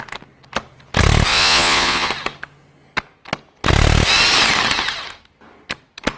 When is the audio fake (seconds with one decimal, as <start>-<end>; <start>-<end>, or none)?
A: 1.3-2.1